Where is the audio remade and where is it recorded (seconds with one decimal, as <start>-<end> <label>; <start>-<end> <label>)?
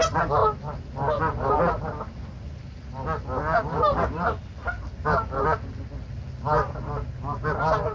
0.0-7.9 recorded